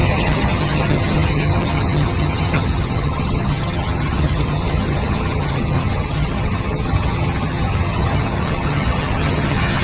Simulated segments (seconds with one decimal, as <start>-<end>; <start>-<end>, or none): 0.0-9.8